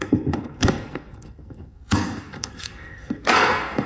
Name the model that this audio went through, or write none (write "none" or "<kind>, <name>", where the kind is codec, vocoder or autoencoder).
codec, SNAC